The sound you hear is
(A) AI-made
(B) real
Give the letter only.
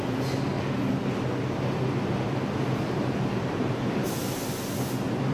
B